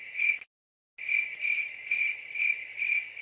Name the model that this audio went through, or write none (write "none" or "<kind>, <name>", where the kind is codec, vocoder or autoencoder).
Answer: none